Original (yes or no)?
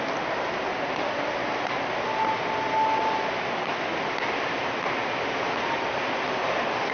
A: yes